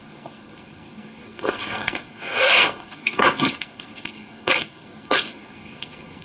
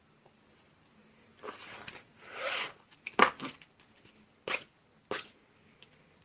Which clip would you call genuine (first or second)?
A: second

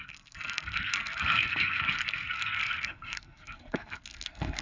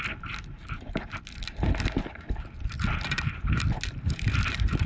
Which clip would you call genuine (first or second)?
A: second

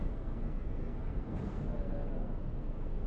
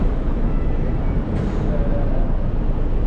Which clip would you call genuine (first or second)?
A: second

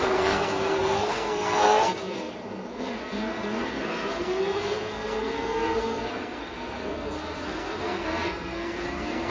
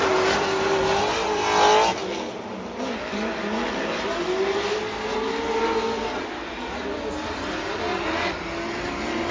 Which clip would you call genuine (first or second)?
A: second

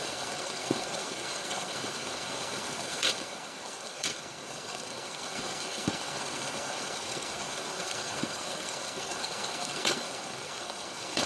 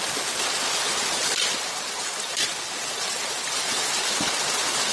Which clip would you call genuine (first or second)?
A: second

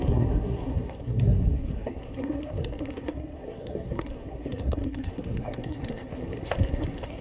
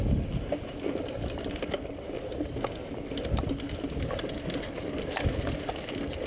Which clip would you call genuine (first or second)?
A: second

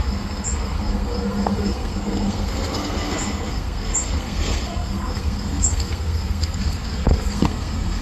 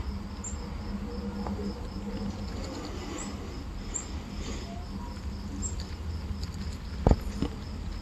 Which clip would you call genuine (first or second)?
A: second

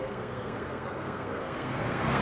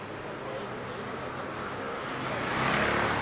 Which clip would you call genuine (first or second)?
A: second